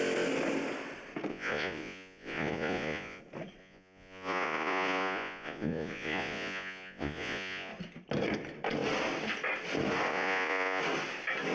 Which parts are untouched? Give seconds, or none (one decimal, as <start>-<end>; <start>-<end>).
0.0-1.3; 3.2-3.6; 7.7-10.1; 10.8-11.5